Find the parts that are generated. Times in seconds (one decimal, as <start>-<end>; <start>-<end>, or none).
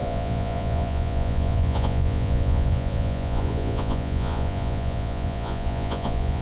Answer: 0.0-6.4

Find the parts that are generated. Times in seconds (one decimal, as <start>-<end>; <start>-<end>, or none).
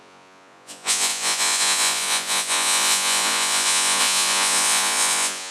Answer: 0.0-5.5